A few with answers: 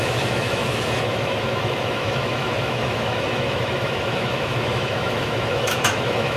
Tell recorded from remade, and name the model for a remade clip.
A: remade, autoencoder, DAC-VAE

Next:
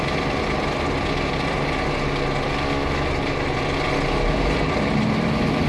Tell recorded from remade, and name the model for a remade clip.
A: recorded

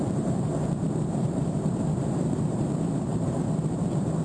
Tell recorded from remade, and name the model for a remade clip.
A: remade, vocoder, BigVGAN v2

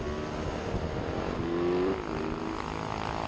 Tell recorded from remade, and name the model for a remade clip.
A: recorded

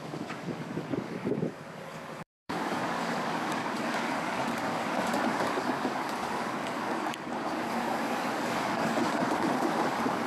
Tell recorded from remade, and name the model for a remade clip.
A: remade, codec, DAC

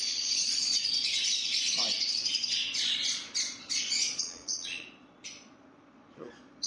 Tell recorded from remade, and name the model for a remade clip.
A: remade, vocoder, Vocos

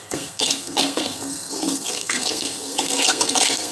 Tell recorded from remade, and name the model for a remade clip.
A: remade, codec, SNAC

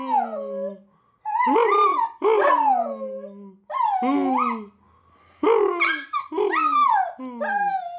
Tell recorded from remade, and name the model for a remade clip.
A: recorded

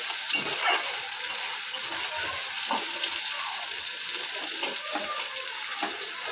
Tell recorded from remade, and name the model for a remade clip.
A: recorded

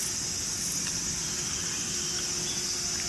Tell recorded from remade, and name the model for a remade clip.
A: recorded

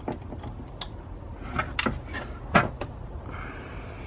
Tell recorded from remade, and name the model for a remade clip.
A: recorded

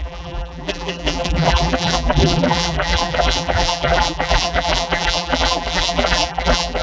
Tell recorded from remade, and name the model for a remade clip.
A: remade, vocoder, BigVGAN v2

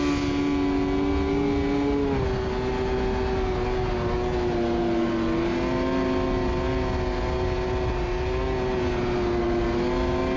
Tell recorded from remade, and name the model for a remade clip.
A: recorded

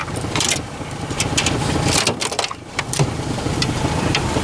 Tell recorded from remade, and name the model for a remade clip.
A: remade, vocoder, BigVGAN v2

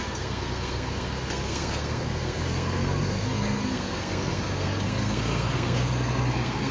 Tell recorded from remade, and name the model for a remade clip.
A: remade, codec, SNAC